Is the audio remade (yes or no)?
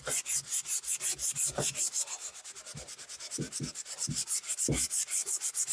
no